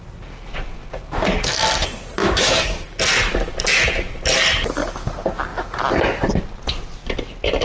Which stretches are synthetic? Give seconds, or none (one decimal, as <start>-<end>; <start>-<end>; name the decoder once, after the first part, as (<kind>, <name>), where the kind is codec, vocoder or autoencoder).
2.2-3.0 (codec, DAC)